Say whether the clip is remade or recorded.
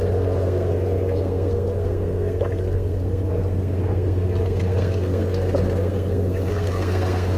remade